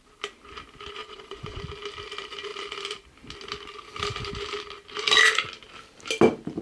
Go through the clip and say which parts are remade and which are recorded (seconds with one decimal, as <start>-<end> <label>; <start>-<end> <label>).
0.0-1.0 recorded; 1.0-1.6 remade; 1.6-6.6 recorded

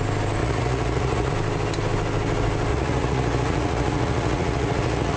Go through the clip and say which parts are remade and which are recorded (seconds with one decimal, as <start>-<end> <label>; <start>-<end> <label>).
0.0-0.4 recorded; 0.4-1.3 remade; 1.3-2.7 recorded; 2.7-5.2 remade

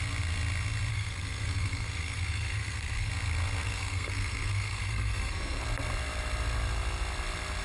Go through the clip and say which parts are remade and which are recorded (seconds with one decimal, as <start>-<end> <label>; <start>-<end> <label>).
0.0-0.9 recorded; 0.9-3.1 remade; 3.1-3.6 recorded; 3.6-5.6 remade; 5.6-7.6 recorded

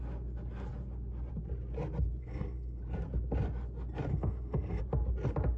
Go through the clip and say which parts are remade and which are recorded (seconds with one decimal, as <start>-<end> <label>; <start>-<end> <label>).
0.0-2.2 recorded; 2.2-2.8 remade; 2.8-4.1 recorded; 4.1-4.8 remade; 4.8-5.6 recorded

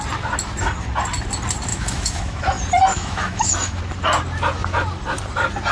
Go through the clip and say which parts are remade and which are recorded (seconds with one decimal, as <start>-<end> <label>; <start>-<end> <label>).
0.0-1.7 recorded; 1.7-2.4 remade; 2.4-2.9 recorded; 2.9-3.8 remade; 3.8-5.7 recorded

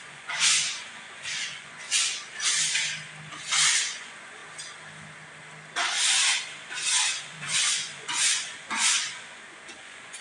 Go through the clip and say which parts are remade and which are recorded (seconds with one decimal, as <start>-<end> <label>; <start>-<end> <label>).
0.0-2.0 remade; 2.0-3.8 recorded; 3.8-4.4 remade; 4.4-7.2 recorded; 7.2-10.2 remade